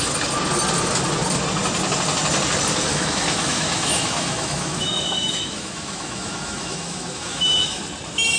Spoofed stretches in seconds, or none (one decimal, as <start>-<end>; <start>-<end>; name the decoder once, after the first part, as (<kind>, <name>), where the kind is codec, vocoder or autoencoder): 2.9-7.8 (autoencoder, DAC-VAE)